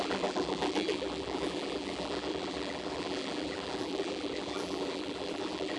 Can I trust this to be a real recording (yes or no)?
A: no